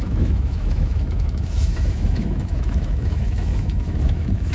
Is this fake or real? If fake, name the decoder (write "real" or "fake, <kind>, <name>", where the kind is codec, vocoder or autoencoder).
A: fake, autoencoder, DAC-VAE